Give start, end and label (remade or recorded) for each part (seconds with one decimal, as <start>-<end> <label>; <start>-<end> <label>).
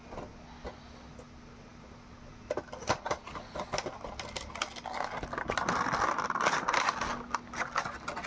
0.0-8.3 recorded